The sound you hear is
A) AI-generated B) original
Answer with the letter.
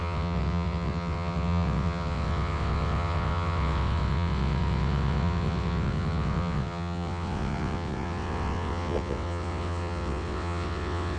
A